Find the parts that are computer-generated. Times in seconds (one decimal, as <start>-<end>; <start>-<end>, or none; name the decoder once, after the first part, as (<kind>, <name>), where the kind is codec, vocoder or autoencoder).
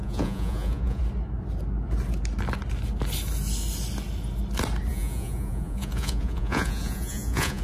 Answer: 0.0-1.0 (vocoder, Vocos); 4.9-7.6